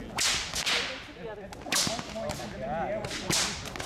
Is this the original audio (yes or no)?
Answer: yes